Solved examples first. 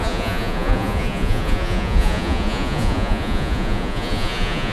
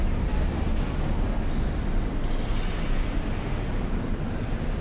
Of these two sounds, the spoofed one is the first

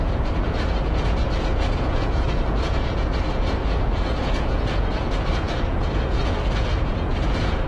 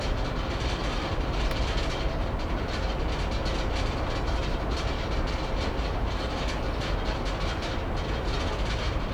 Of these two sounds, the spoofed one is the first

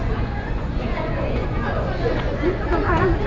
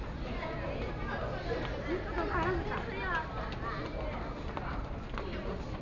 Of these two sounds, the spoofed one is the first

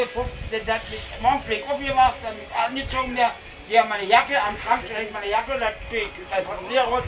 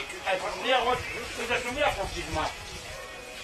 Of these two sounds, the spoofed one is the second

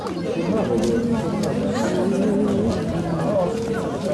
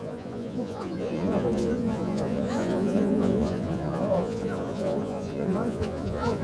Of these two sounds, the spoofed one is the second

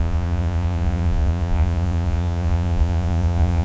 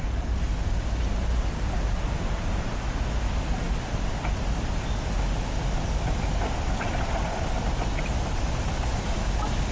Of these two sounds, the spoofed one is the first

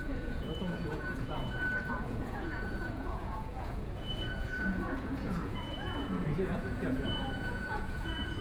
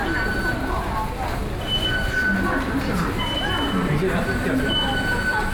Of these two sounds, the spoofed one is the first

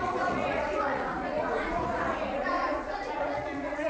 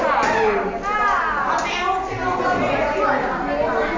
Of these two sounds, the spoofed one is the first